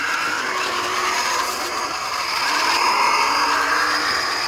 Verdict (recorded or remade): remade